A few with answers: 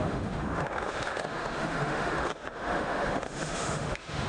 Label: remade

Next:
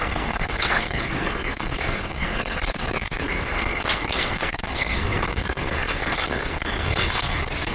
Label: remade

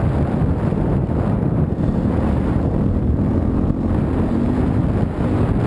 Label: recorded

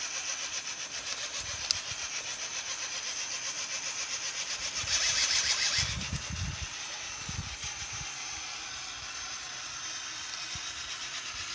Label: recorded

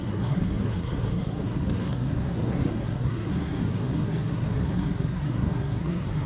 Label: remade